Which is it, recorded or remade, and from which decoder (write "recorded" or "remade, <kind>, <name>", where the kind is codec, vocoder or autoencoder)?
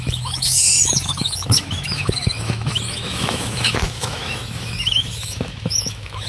remade, autoencoder, DAC-VAE